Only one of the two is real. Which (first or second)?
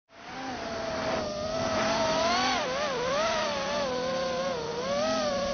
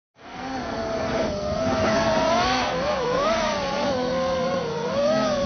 first